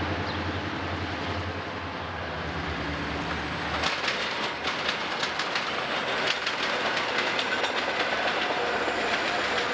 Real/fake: real